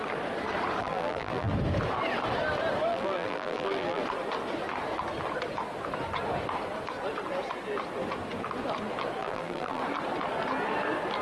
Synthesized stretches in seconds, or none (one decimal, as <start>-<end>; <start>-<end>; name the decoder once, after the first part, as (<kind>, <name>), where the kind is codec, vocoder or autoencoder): 0.8-1.5 (vocoder, BigVGAN v2); 2.9-4.0; 9.2-9.8

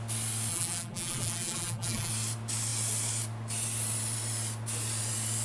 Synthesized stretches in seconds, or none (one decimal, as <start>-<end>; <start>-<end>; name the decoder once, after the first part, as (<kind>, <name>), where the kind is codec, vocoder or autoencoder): 0.5-2.1 (vocoder, BigVGAN v2)

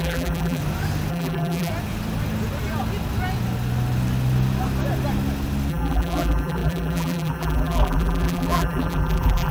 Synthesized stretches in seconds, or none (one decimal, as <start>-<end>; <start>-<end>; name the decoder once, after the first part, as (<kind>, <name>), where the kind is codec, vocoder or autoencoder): 0.0-0.6 (vocoder, BigVGAN v2); 1.1-1.7; 5.7-9.5

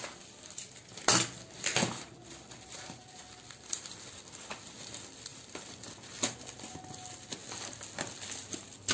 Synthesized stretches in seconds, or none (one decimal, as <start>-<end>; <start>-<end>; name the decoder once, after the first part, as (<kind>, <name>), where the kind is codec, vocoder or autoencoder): none

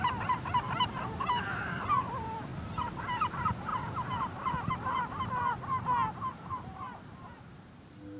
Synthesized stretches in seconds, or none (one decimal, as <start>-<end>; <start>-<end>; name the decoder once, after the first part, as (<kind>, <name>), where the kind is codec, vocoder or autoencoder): 0.0-2.5 (vocoder, BigVGAN v2); 3.2-3.7; 6.1-8.2